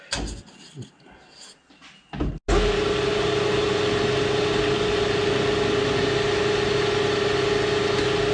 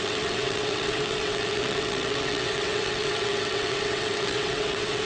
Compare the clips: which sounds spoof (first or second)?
second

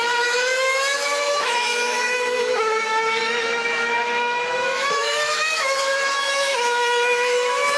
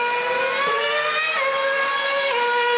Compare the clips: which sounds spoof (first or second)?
first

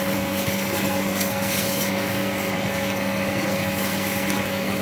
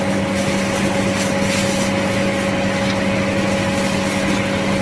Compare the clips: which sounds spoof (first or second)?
first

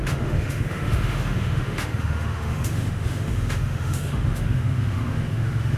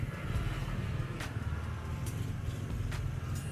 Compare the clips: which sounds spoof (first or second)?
first